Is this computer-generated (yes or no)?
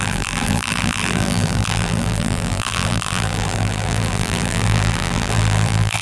yes